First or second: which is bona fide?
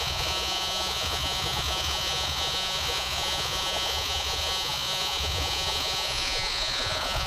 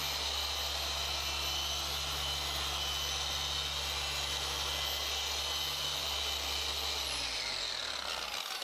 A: second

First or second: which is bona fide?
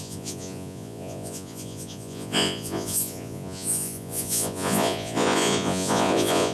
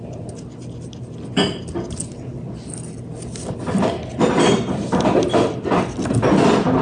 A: second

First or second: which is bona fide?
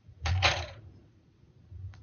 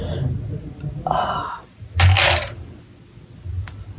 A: second